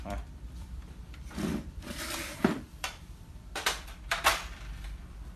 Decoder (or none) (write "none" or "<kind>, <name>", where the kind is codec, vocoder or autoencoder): vocoder, BigVGAN v2